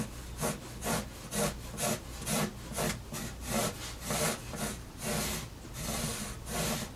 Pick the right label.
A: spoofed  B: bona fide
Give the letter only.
B